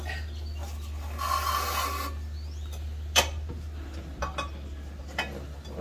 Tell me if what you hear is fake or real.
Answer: real